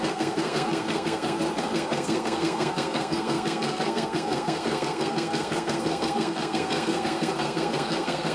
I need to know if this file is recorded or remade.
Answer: remade